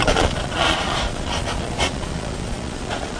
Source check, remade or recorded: remade